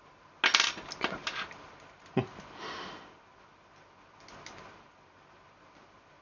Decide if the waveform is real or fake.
real